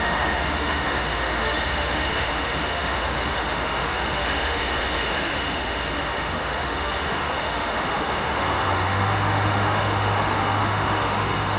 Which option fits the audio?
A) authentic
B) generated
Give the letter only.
B